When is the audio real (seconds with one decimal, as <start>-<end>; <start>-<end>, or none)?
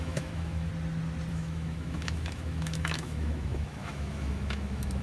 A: 0.7-1.3